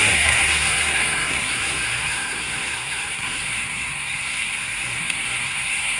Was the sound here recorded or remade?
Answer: remade